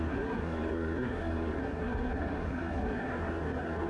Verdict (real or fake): fake